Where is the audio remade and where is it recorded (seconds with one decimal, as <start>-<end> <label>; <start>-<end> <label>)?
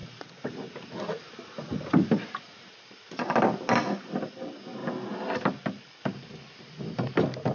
0.0-7.5 recorded